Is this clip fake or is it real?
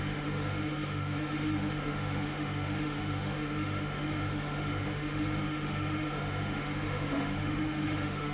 fake